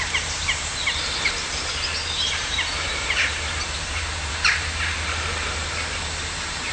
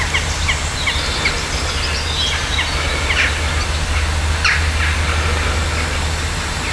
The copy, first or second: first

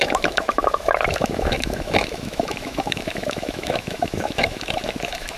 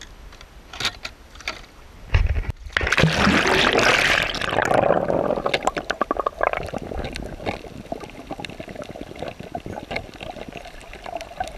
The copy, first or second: first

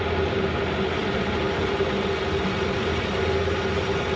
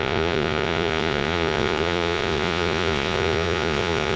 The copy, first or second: second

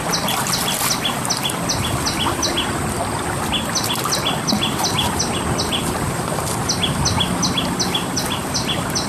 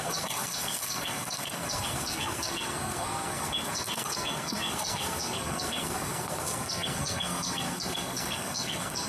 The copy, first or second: second